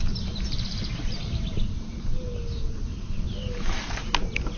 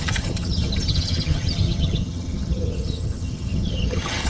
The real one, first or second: first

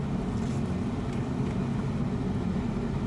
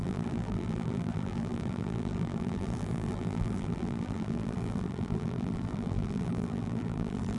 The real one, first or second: first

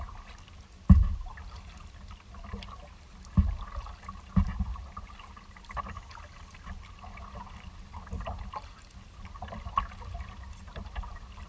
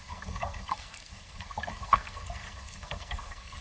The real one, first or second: first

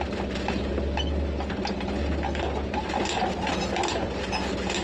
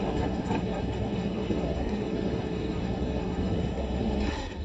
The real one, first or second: first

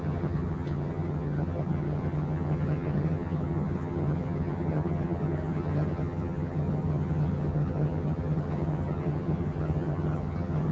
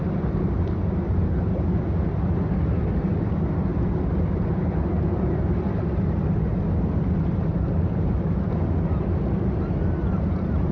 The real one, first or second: second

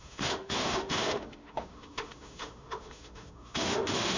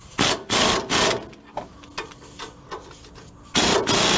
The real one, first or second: second